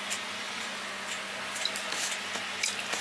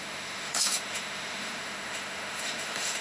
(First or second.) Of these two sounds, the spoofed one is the second